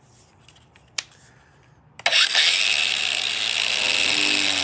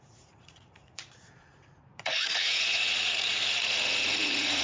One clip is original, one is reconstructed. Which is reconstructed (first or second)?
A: second